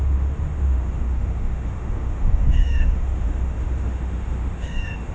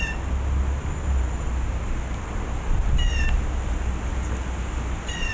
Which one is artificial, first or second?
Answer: first